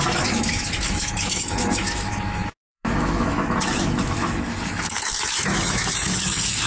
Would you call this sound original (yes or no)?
no